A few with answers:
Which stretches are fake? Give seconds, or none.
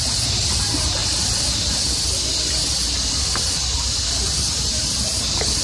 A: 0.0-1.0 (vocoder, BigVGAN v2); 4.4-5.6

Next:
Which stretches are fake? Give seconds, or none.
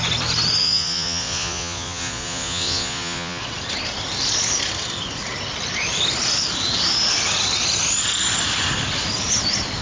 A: 0.6-3.4 (vocoder, Vocos)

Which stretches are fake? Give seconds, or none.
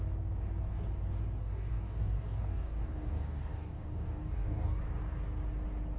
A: 1.4-4.8 (codec, DAC)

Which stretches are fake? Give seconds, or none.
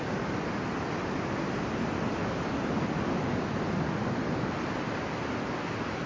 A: 2.2-4.3 (vocoder, BigVGAN v2)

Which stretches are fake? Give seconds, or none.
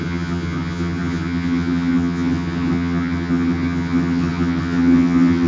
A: 0.0-5.5 (vocoder, HiFi-GAN)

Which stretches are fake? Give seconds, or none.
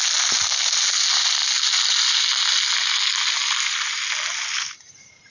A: none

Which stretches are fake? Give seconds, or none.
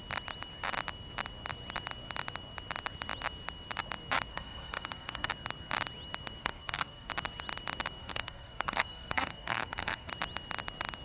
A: 4.3-5.3 (codec, SNAC); 6.4-7.1; 8.0-10.1